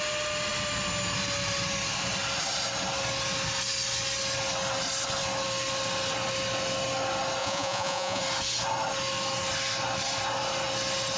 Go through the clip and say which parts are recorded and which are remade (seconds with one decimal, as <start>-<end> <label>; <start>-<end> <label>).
0.0-7.4 recorded; 7.4-8.2 remade; 8.2-11.2 recorded